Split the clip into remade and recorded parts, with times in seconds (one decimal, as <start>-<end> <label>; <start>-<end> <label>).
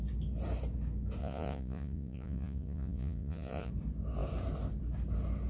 0.0-1.2 recorded; 1.2-3.7 remade; 3.7-5.5 recorded